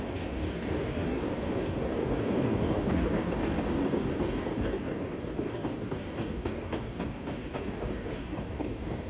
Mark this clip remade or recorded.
remade